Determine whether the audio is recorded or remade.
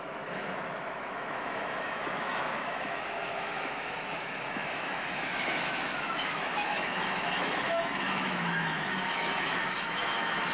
remade